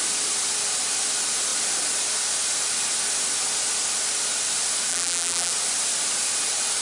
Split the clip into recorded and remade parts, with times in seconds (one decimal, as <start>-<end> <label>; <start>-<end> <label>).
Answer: 0.0-4.9 recorded; 4.9-5.5 remade; 5.5-6.8 recorded